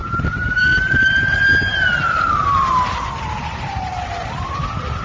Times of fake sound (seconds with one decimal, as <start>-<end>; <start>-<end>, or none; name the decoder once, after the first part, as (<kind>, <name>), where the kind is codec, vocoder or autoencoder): 0.0-0.6 (vocoder, BigVGAN v2); 1.7-5.0